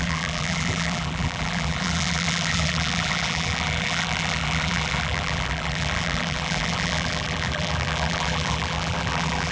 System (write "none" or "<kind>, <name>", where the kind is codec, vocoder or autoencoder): vocoder, BigVGAN v2